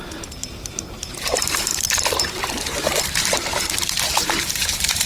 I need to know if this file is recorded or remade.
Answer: remade